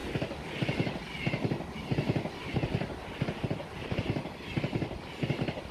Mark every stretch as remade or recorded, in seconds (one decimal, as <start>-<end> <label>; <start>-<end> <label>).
0.0-5.7 recorded